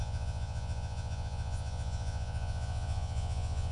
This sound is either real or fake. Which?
fake